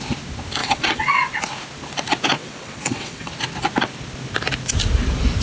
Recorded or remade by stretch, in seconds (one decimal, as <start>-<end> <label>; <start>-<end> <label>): 0.0-0.6 recorded; 0.6-1.2 remade; 1.2-2.3 recorded; 2.3-3.3 remade; 3.3-5.4 recorded

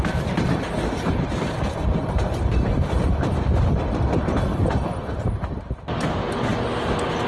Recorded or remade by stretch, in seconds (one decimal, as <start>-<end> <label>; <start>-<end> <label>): 0.0-7.3 recorded

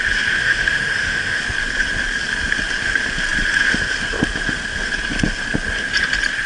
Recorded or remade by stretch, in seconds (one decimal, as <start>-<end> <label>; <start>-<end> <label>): 0.0-0.4 recorded; 0.4-1.4 remade; 1.4-6.5 recorded

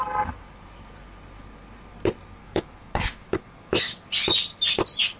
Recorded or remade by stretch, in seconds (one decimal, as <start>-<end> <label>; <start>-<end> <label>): 0.0-2.4 recorded; 2.4-4.0 remade; 4.0-5.2 recorded

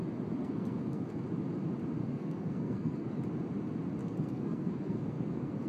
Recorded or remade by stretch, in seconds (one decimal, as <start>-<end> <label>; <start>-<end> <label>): 0.0-0.4 recorded; 0.4-1.2 remade; 1.2-2.0 recorded; 2.0-3.1 remade; 3.1-4.0 recorded; 4.0-5.7 remade

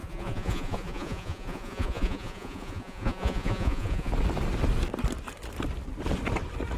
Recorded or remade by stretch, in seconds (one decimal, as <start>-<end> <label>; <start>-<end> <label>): 0.0-4.1 remade; 4.1-6.8 recorded